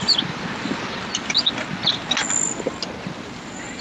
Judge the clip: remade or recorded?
recorded